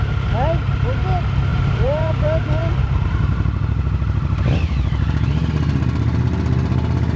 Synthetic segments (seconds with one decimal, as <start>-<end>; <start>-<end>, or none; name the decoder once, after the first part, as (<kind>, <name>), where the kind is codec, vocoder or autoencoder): 1.5-2.1 (vocoder, BigVGAN v2)